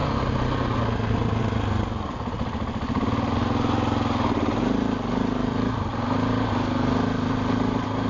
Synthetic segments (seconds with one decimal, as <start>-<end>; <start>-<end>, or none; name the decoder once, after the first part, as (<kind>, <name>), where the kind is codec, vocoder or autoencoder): none

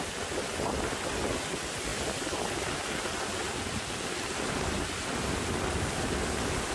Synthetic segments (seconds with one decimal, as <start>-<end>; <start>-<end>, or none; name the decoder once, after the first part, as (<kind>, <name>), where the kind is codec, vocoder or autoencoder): none